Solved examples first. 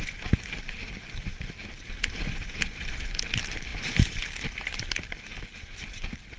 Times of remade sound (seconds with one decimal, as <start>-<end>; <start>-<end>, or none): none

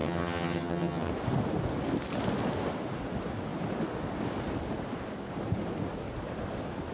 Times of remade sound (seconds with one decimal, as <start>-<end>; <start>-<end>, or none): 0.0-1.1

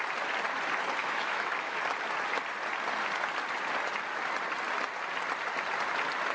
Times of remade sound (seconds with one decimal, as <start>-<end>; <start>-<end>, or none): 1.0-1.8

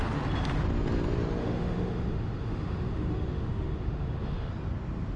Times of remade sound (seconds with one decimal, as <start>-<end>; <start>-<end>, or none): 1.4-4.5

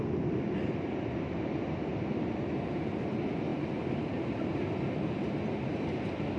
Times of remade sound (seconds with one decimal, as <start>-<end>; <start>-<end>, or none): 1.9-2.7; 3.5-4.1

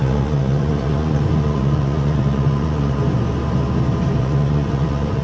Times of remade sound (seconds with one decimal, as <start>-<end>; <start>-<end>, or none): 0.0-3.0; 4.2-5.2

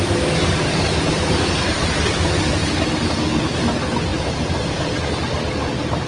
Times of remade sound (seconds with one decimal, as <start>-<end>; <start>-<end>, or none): none